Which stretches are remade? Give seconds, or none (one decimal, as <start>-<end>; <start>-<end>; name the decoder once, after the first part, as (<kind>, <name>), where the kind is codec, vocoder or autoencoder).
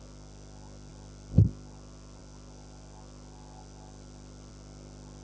none